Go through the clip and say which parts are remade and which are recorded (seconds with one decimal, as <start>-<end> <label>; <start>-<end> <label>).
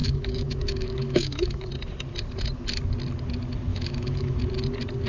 0.0-1.7 remade; 1.7-3.7 recorded; 3.7-4.4 remade; 4.4-5.1 recorded